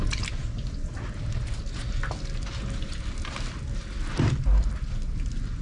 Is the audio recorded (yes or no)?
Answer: yes